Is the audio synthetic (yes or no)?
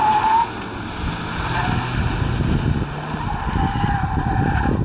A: no